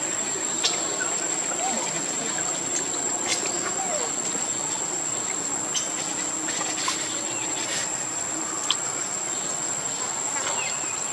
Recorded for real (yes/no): yes